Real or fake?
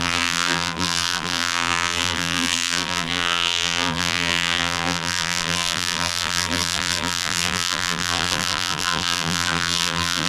fake